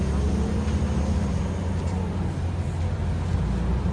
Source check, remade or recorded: recorded